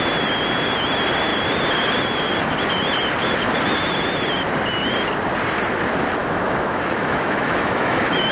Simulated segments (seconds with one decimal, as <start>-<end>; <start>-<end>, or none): 6.2-8.3